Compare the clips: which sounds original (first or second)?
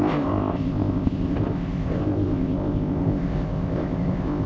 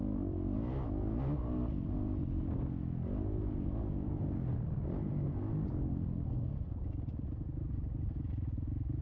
second